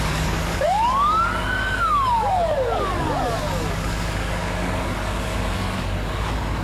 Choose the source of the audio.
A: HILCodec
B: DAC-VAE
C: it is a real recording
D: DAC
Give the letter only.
D